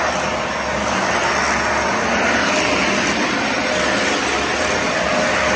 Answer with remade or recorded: recorded